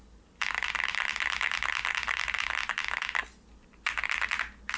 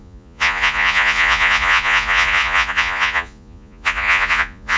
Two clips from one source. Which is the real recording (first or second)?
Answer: first